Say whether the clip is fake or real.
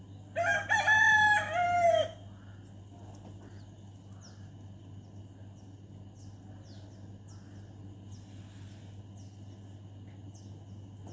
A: real